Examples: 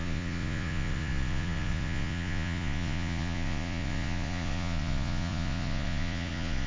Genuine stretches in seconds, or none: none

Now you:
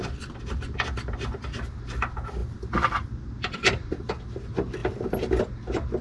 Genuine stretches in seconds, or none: 0.0-2.4; 4.1-4.8; 5.4-6.0